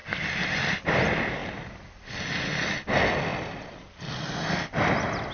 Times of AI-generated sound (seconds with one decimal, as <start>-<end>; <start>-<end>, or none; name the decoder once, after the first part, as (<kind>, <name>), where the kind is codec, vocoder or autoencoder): 0.0-0.6 (vocoder, BigVGAN v2)